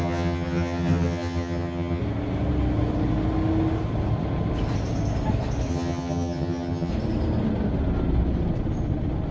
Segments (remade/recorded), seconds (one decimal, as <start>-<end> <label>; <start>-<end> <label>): 0.0-2.0 remade; 2.0-5.7 recorded; 5.7-6.9 remade; 6.9-9.3 recorded